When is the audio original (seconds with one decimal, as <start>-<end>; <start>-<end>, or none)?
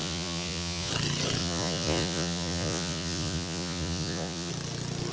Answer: 0.9-1.4; 4.5-5.1